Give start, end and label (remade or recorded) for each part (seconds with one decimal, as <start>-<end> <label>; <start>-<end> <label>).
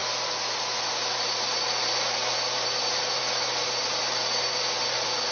0.0-5.3 recorded